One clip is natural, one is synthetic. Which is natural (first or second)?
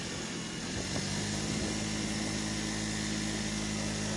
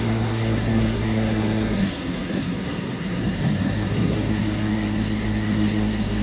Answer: first